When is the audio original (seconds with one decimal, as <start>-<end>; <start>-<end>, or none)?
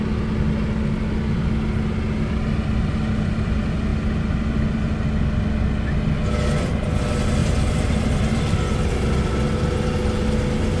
0.0-7.4; 8.8-10.8